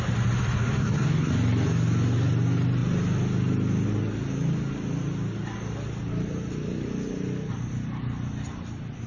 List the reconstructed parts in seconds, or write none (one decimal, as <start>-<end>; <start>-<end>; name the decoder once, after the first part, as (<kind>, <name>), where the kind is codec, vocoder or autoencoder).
0.6-1.3 (codec, DAC)